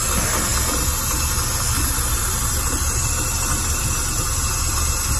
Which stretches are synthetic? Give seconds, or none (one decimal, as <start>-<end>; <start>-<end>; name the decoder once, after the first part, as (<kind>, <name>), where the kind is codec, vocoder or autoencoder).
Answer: none